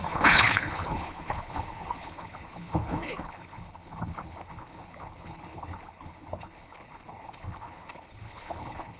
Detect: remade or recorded remade